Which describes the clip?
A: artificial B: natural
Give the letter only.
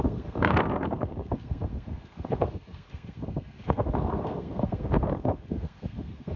A